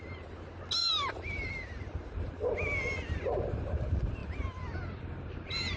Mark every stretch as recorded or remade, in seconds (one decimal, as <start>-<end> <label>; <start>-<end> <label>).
0.0-0.8 recorded; 0.8-1.5 remade; 1.5-5.8 recorded